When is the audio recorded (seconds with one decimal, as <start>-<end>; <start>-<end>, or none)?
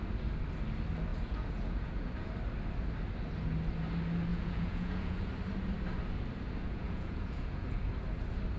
0.0-1.1; 2.3-4.3; 5.3-6.6; 7.9-8.6